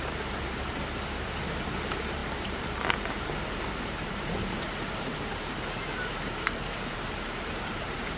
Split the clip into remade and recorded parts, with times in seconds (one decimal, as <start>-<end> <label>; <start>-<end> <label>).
0.0-8.2 remade